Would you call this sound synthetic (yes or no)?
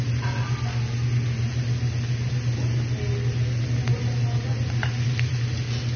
no